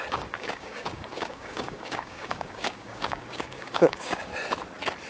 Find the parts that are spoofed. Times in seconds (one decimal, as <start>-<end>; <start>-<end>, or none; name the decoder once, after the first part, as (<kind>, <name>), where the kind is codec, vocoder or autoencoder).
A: 0.0-4.3 (codec, DAC)